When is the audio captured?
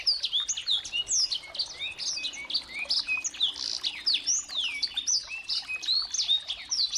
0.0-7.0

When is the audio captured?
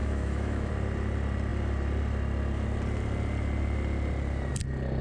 0.7-5.0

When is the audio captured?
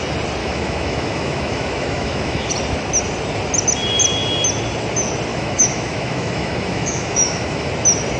0.0-0.4; 2.5-5.3; 7.7-8.2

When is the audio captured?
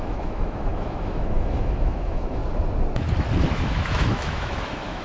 2.4-3.5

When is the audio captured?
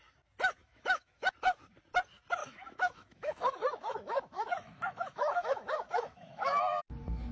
0.0-0.6; 1.3-2.4; 6.8-7.3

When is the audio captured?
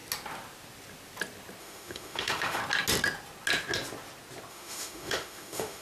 0.0-1.6; 2.6-4.5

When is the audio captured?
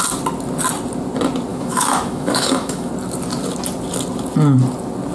0.0-1.5; 2.9-5.1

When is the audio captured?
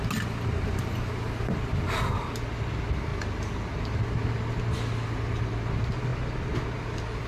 0.0-7.3